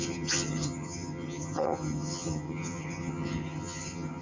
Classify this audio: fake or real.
fake